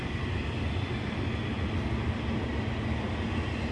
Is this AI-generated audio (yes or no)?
no